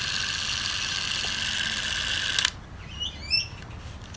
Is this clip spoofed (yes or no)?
no